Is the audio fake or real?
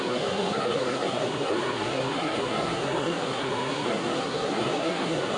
fake